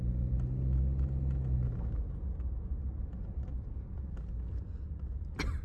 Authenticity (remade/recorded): recorded